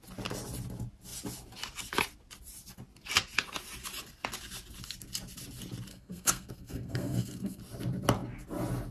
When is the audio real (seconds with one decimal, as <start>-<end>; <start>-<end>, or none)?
0.0-5.9; 7.6-8.9